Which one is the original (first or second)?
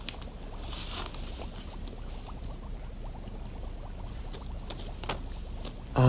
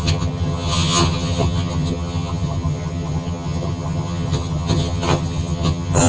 first